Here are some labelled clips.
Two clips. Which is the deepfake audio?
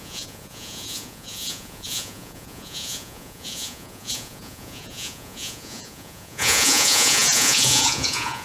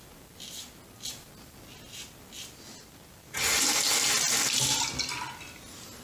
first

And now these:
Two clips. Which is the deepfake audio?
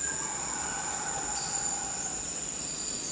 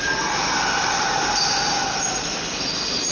first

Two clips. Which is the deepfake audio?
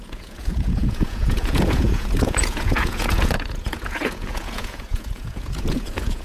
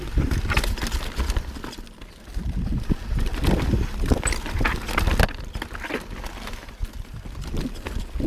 first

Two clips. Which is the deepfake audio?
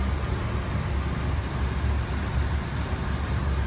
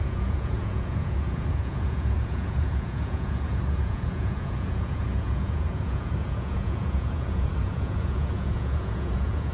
second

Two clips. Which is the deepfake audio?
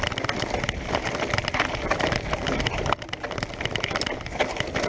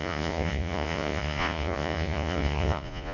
second